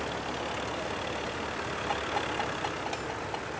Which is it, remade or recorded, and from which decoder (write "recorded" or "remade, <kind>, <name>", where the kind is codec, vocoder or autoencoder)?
recorded